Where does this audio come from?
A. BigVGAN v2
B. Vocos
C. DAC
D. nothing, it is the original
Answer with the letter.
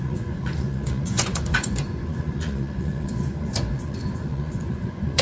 B